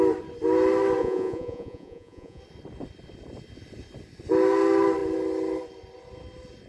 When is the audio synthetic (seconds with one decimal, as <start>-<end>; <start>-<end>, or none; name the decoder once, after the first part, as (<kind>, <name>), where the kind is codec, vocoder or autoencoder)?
1.0-2.4 (vocoder, Vocos)